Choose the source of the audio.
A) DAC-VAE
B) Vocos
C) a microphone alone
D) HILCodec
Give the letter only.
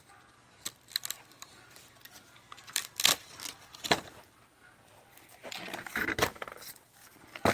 C